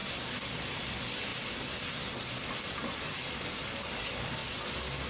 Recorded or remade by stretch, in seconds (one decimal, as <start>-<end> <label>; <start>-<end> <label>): 0.0-5.1 recorded